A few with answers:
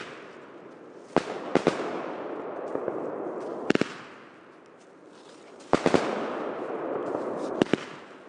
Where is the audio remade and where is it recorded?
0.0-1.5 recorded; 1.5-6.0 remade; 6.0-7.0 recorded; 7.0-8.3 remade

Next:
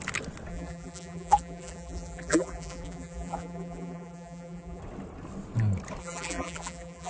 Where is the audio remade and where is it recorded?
0.0-0.5 recorded; 0.5-4.8 remade; 4.8-6.0 recorded; 6.0-7.1 remade

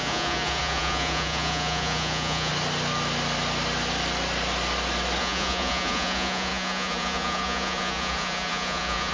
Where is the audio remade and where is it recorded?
0.0-2.5 remade; 2.5-5.2 recorded; 5.2-9.1 remade

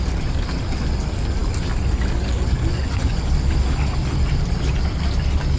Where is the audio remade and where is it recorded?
0.0-2.7 recorded; 2.7-3.2 remade; 3.2-5.6 recorded

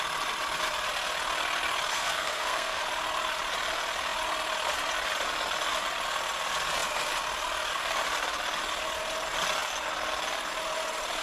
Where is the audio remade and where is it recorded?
0.0-1.9 recorded; 1.9-2.8 remade; 2.8-11.2 recorded

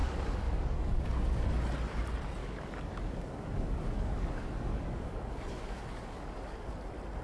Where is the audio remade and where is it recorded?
0.0-1.5 remade; 1.5-2.4 recorded; 2.4-6.7 remade; 6.7-7.2 recorded